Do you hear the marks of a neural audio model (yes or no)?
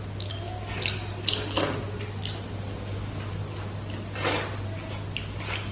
no